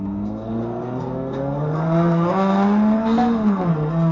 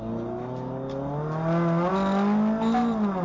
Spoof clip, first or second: first